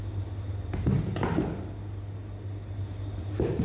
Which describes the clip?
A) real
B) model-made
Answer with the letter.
A